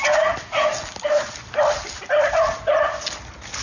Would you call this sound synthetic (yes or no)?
no